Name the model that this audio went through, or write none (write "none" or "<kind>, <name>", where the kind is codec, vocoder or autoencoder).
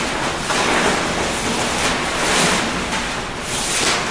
none